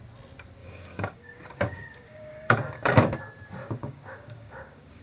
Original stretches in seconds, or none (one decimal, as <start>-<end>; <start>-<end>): 0.0-0.6; 3.2-3.6